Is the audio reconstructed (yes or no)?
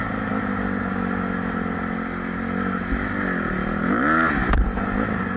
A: no